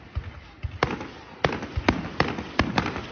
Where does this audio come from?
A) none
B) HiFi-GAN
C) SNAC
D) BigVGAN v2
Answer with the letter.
A